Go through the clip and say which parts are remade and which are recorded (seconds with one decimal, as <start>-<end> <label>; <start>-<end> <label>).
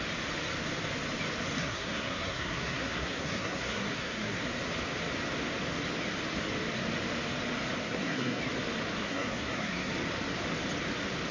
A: 0.0-1.6 recorded; 1.6-4.5 remade; 4.5-7.8 recorded; 7.8-8.4 remade; 8.4-9.0 recorded; 9.0-9.9 remade; 9.9-11.3 recorded